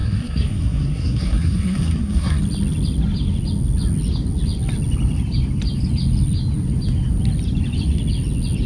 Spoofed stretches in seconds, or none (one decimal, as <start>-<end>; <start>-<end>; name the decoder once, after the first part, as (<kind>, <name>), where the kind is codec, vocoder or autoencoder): 0.0-2.4 (codec, SNAC)